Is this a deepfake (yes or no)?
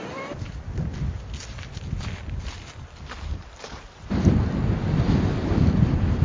no